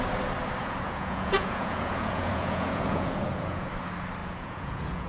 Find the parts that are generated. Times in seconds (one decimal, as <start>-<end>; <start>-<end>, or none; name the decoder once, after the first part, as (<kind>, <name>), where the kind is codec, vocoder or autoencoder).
0.6-3.7 (vocoder, Vocos); 4.2-5.1